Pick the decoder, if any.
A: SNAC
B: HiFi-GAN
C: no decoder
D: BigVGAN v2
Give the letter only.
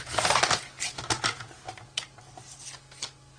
C